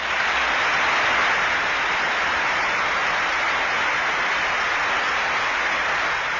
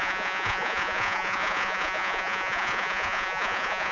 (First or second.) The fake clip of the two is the second